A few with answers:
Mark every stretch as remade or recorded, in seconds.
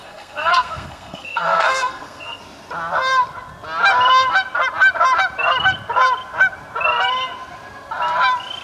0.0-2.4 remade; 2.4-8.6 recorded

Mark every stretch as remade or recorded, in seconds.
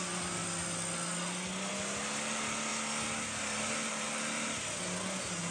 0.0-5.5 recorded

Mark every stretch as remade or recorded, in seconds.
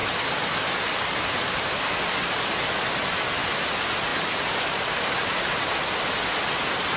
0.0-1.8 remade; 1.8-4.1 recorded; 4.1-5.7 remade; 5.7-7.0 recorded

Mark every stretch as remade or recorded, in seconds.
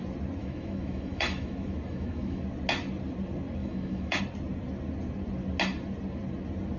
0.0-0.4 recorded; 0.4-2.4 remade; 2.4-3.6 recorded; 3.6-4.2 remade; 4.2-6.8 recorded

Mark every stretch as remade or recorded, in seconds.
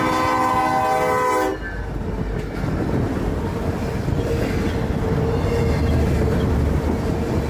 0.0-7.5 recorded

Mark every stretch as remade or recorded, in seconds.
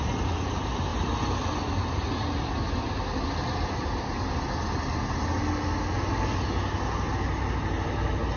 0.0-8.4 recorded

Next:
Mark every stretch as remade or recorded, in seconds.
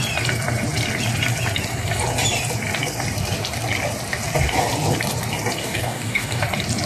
0.0-5.6 recorded; 5.6-6.4 remade; 6.4-6.9 recorded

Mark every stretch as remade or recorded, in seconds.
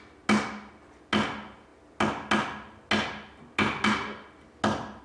0.0-5.0 recorded